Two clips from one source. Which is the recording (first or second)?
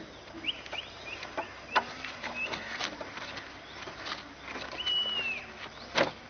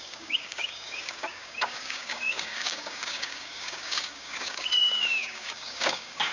first